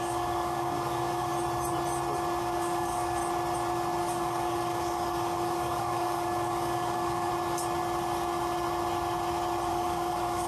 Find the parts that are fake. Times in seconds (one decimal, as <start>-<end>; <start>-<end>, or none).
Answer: 0.0-1.3; 2.4-3.2; 4.0-7.3; 9.7-10.5